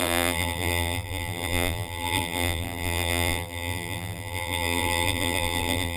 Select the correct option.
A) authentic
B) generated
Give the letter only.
B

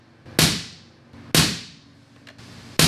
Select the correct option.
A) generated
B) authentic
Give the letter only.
B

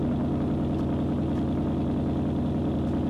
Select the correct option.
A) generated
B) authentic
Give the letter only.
B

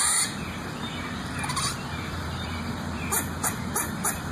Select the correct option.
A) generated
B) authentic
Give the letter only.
A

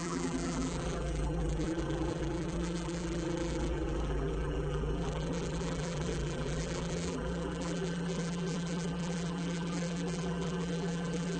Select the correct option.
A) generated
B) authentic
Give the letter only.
A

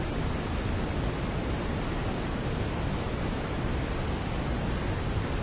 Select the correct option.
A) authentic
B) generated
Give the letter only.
A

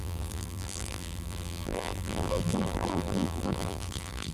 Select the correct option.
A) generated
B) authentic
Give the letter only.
A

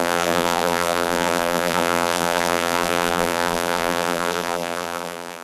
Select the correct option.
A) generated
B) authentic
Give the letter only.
A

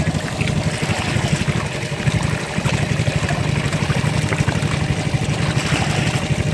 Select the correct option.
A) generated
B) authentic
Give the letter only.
B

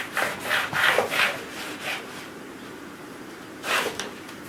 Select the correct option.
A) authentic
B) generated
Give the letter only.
B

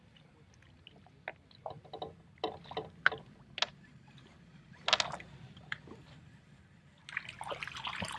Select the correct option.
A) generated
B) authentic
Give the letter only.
B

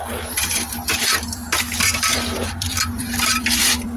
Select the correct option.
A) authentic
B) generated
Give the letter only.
B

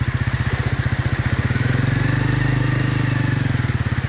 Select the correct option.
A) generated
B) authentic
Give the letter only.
B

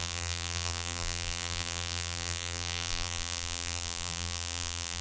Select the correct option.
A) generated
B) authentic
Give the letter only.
A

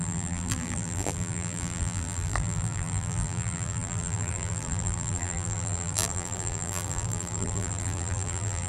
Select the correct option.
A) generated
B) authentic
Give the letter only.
A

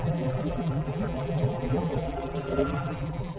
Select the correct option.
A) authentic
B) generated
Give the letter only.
B